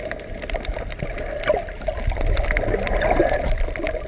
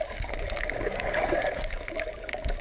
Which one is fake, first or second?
second